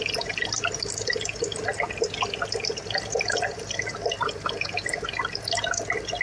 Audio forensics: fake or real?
real